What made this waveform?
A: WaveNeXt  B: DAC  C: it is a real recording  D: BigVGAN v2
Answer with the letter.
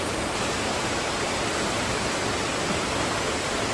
C